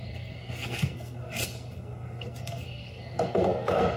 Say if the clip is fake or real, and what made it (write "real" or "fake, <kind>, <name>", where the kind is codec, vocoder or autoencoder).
fake, codec, SNAC